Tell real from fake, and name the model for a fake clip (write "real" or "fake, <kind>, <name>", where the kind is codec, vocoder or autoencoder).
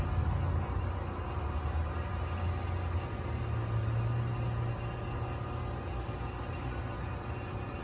real